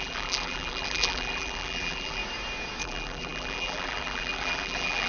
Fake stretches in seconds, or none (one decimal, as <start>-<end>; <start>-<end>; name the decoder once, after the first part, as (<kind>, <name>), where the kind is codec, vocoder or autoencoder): 0.0-2.2 (vocoder, BigVGAN v2); 2.8-5.1